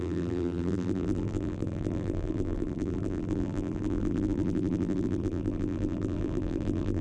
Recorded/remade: remade